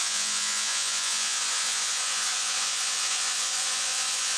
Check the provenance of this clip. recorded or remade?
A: remade